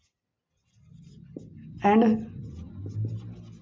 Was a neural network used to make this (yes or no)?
no